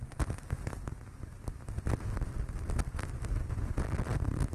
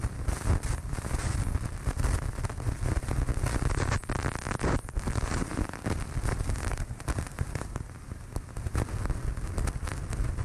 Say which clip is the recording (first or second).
first